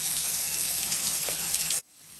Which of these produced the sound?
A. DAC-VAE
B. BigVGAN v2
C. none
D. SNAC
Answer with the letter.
D